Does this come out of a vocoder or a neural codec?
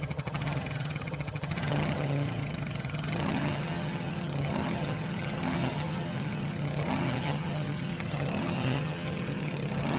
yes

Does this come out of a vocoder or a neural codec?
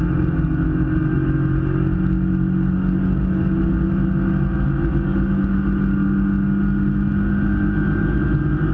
no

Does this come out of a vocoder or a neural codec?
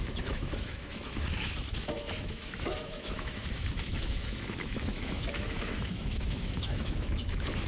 yes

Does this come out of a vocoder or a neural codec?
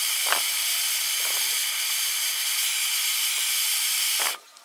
yes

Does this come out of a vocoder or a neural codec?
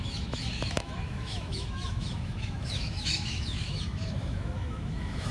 yes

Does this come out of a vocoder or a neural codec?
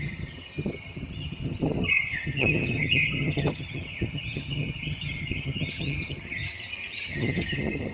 yes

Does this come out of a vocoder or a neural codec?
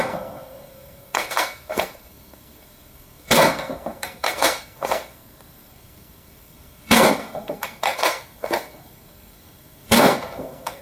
yes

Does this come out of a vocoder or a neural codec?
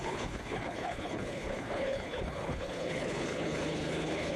yes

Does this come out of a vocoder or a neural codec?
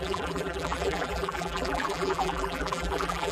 yes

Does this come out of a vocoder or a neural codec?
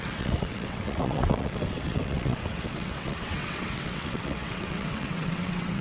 yes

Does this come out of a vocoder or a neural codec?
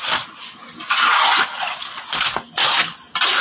no